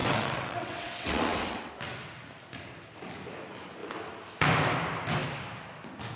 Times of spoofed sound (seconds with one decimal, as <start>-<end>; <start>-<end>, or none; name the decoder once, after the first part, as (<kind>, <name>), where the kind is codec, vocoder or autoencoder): 0.0-1.7 (vocoder, WaveNeXt)